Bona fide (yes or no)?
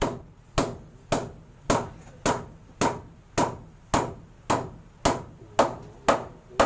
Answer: yes